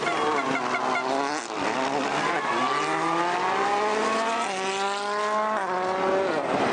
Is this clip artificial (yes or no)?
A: no